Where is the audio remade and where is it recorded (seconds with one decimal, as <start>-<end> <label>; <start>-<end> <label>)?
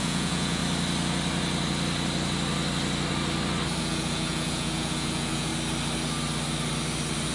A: 0.0-0.6 remade; 0.6-3.8 recorded; 3.8-5.5 remade; 5.5-7.3 recorded